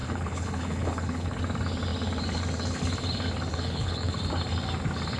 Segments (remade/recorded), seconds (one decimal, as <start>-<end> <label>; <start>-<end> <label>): 0.0-1.4 remade; 1.4-3.5 recorded; 3.5-4.2 remade; 4.2-5.2 recorded